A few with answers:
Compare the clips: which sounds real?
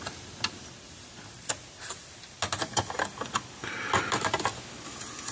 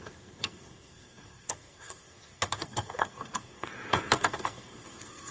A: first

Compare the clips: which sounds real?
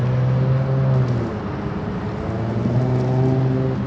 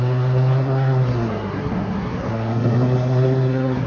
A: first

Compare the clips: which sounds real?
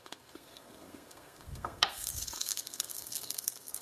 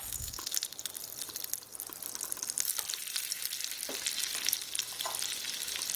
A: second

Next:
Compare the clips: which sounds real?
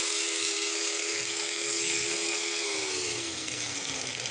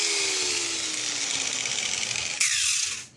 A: second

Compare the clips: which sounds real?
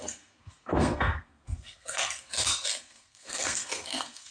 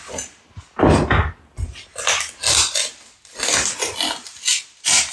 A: second